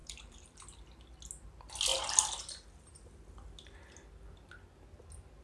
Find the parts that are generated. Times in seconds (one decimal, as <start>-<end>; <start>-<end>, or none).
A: 0.0-0.6